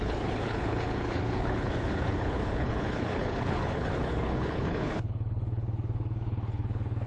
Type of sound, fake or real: fake